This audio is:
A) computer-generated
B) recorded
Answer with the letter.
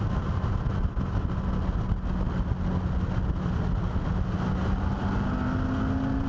B